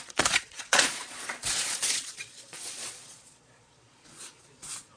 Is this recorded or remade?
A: remade